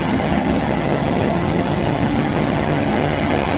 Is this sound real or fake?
fake